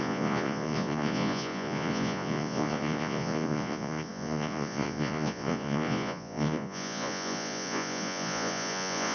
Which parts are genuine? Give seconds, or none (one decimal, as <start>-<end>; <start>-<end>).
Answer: none